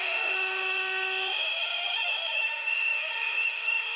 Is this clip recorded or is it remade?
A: remade